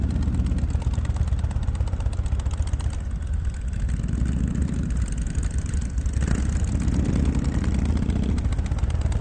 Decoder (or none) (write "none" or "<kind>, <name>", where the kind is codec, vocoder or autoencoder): none